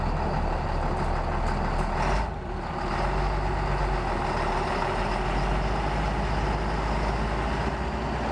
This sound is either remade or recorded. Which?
recorded